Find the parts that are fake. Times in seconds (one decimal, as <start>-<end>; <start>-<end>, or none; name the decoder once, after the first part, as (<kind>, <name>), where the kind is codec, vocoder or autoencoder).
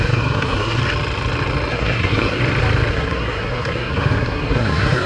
0.0-0.8 (codec, SNAC); 1.7-2.4; 2.9-5.1